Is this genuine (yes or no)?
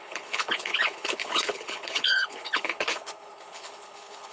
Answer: no